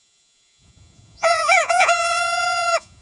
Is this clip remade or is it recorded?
remade